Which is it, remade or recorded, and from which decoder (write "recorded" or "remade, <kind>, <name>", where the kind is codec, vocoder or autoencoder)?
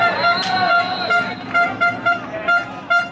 recorded